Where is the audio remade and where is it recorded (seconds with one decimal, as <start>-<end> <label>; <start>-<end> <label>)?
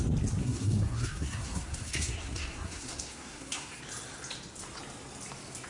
0.0-0.4 recorded; 0.4-3.8 remade; 3.8-5.7 recorded